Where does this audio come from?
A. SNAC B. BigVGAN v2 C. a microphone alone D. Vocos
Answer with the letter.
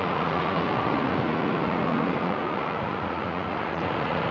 D